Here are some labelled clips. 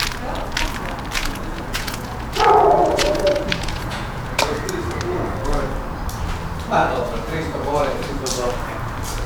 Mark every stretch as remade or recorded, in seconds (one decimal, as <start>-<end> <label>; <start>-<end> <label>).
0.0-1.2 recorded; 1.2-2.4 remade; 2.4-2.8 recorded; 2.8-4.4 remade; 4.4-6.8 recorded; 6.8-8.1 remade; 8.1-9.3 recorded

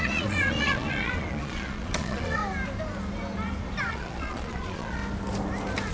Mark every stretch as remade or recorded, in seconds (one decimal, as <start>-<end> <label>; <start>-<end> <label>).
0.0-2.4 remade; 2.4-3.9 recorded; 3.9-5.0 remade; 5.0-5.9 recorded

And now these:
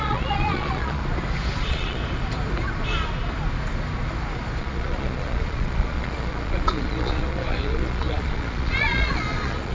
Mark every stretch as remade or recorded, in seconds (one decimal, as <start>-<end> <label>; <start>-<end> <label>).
0.0-1.0 remade; 1.0-1.6 recorded; 1.6-2.0 remade; 2.0-4.6 recorded; 4.6-9.7 remade

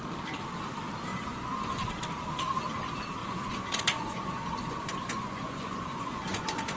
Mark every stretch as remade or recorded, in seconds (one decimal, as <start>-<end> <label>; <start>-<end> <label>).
0.0-1.1 recorded; 1.1-1.9 remade; 1.9-3.2 recorded; 3.2-6.8 remade

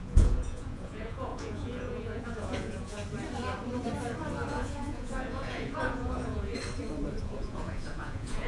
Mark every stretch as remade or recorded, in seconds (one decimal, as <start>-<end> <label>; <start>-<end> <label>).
0.0-3.0 remade; 3.0-4.5 recorded; 4.5-6.5 remade; 6.5-7.2 recorded; 7.2-8.5 remade

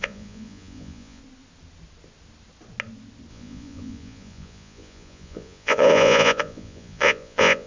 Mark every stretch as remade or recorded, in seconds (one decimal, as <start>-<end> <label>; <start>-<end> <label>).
0.0-1.2 remade; 1.2-3.3 recorded; 3.3-7.7 remade